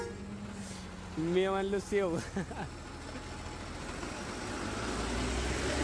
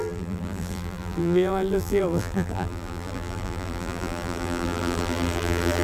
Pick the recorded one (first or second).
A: first